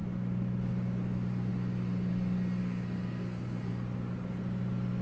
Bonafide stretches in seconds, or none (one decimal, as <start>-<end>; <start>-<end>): 0.0-2.6; 3.7-5.0